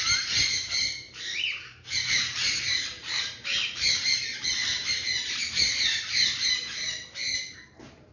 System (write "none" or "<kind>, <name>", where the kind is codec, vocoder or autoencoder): vocoder, BigVGAN v2